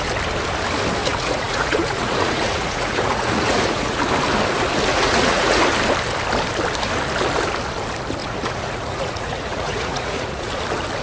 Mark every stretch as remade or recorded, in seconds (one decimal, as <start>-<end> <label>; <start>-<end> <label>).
0.0-1.0 recorded; 1.0-4.0 remade; 4.0-4.9 recorded; 4.9-5.6 remade; 5.6-8.2 recorded; 8.2-10.5 remade; 10.5-11.0 recorded